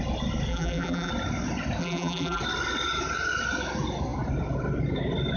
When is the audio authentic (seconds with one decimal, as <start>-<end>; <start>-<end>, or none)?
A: 0.0-0.5; 1.1-1.8; 2.4-5.4